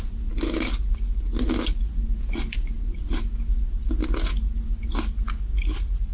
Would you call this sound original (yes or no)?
yes